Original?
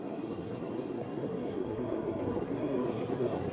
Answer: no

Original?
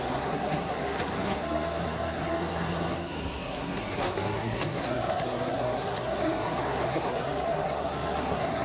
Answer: no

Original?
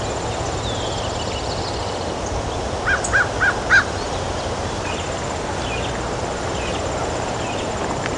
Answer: yes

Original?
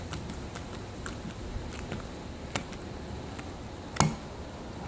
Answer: yes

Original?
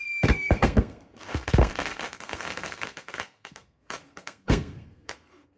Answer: no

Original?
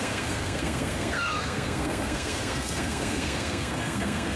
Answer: no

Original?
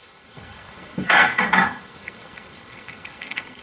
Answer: no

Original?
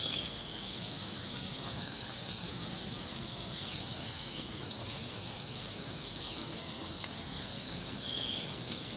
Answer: no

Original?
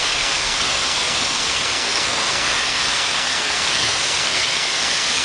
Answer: no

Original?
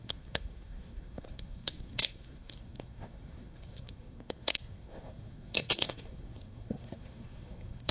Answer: no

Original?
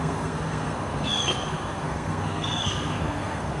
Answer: no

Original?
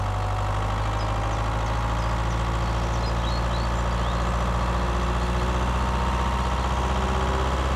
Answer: yes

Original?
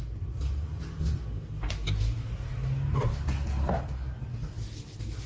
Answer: yes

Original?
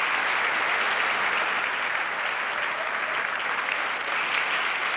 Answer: yes